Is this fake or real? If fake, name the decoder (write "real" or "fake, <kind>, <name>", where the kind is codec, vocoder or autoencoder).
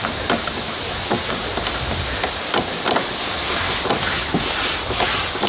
real